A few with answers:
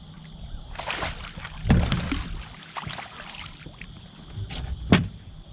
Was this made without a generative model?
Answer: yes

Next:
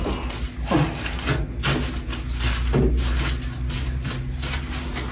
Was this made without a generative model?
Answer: yes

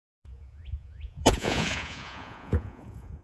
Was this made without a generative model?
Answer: no